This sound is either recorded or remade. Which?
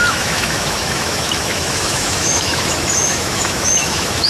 remade